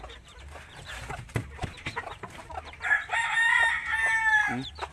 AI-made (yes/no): yes